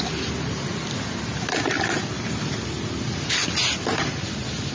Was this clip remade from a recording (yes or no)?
no